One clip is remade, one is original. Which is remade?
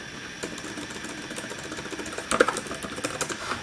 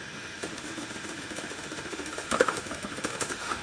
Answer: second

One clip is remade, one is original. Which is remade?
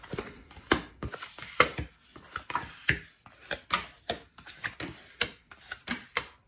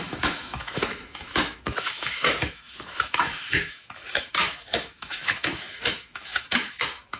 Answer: second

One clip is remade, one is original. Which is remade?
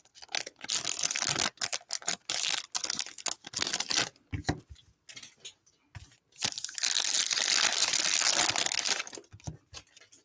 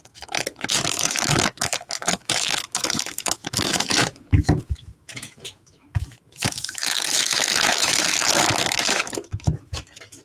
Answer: second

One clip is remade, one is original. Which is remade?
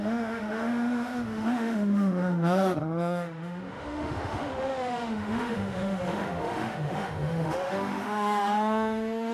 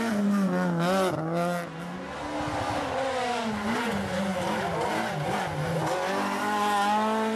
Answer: first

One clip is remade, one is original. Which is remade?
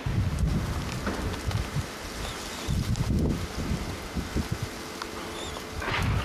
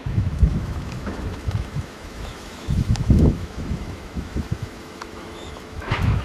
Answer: second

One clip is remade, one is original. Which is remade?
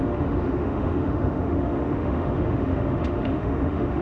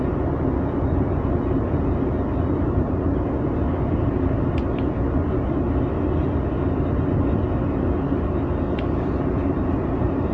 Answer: first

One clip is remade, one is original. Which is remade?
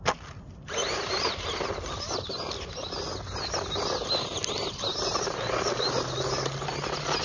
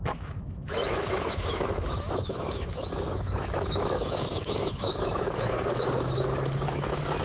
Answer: second